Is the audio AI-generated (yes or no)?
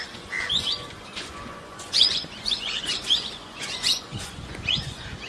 yes